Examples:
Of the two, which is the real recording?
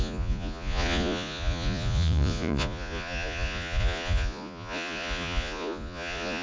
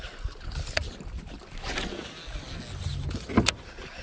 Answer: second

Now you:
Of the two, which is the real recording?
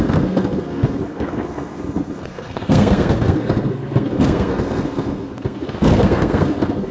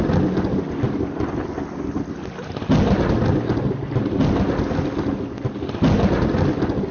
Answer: second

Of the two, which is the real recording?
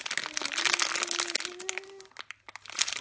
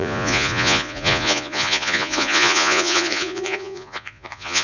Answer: first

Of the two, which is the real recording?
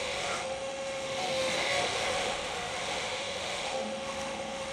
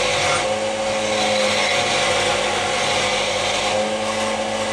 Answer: second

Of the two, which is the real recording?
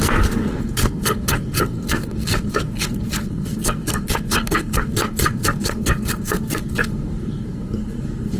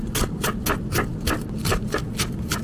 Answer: second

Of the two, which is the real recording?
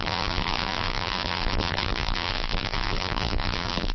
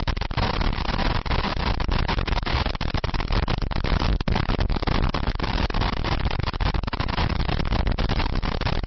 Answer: second